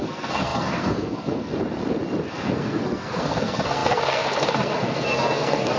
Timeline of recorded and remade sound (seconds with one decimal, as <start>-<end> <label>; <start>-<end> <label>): 0.0-1.5 remade; 1.5-2.3 recorded; 2.3-5.8 remade